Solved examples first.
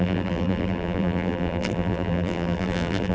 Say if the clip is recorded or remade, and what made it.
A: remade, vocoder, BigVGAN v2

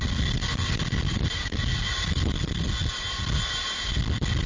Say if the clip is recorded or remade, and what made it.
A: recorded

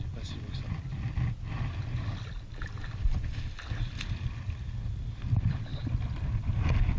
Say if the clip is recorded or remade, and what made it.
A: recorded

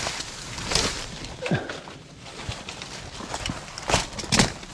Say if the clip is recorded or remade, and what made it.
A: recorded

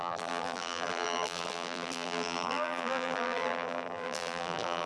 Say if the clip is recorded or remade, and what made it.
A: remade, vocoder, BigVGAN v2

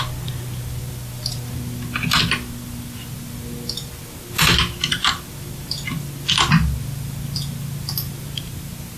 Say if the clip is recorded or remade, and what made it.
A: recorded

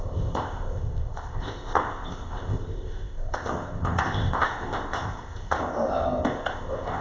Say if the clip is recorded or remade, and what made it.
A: remade, codec, ZipCodec